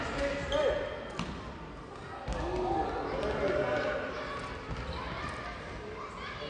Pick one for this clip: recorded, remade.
recorded